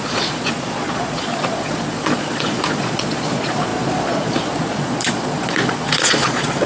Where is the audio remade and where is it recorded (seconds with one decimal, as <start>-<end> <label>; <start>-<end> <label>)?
0.0-6.7 remade